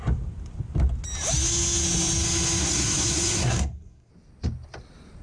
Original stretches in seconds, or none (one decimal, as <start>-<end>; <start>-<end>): 0.0-2.6; 4.1-5.2